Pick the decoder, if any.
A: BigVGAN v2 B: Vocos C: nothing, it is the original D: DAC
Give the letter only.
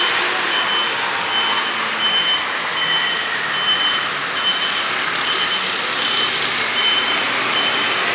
C